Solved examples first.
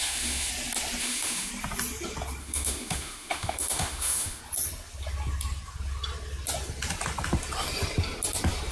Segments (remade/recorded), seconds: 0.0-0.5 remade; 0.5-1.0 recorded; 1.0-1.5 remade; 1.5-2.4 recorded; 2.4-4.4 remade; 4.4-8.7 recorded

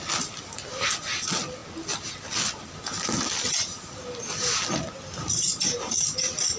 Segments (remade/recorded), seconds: 0.0-6.6 recorded

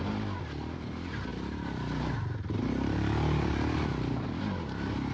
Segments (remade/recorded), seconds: 0.0-5.1 recorded

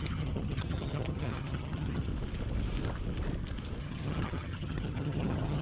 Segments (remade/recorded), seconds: 0.0-2.1 remade; 2.1-3.8 recorded; 3.8-5.6 remade

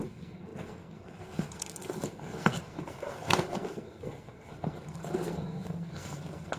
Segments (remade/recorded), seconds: 0.0-6.6 remade

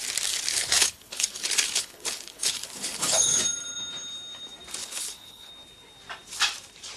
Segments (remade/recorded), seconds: 0.0-0.5 recorded; 0.5-3.4 remade; 3.4-4.8 recorded; 4.8-5.5 remade; 5.5-7.0 recorded

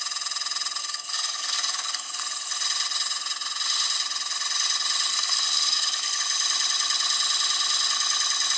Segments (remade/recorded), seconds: 0.0-0.8 recorded; 0.8-2.2 remade; 2.2-5.1 recorded; 5.1-6.2 remade; 6.2-8.6 recorded

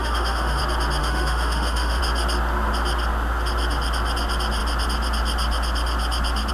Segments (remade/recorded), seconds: 0.0-0.6 remade; 0.6-1.0 recorded; 1.0-2.0 remade; 2.0-6.5 recorded